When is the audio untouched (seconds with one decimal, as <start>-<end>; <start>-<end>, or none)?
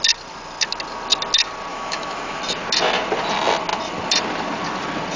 0.0-1.7; 2.4-5.2